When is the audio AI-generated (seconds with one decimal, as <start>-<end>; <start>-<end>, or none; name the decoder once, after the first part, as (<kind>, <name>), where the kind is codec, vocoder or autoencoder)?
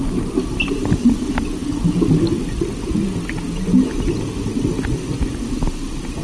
none